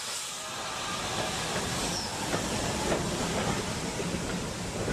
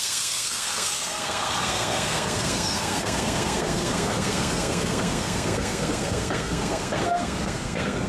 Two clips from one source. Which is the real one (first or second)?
first